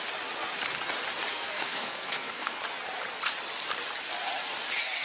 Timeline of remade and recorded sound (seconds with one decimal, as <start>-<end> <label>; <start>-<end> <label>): 0.0-1.3 recorded; 1.3-2.6 remade; 2.6-5.0 recorded